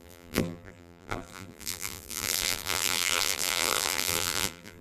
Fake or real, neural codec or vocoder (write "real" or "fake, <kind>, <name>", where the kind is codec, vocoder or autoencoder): fake, vocoder, BigVGAN v2